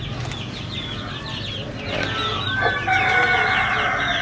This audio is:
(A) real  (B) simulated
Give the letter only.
A